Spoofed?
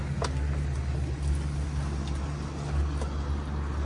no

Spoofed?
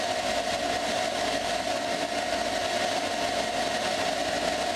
no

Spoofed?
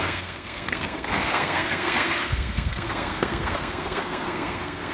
yes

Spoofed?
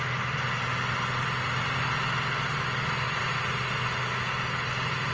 no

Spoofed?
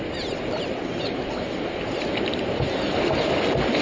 no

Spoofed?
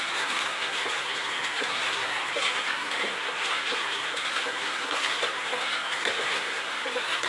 yes